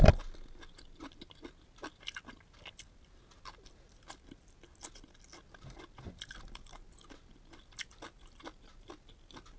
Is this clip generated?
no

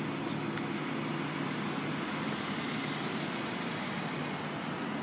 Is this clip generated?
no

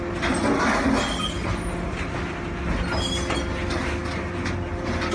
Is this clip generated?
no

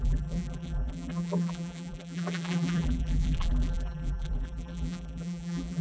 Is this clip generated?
yes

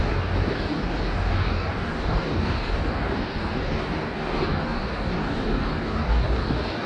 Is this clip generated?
yes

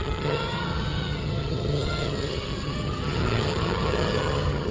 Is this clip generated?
yes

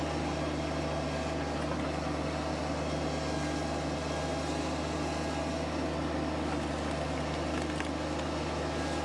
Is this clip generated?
no